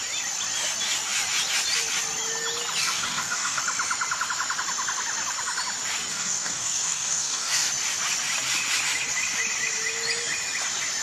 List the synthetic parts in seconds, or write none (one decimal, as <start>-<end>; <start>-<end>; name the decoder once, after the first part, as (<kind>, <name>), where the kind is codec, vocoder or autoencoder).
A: 2.8-3.6 (codec, DAC); 6.1-7.7